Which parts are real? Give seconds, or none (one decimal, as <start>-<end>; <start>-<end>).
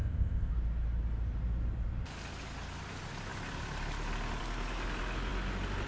0.5-5.9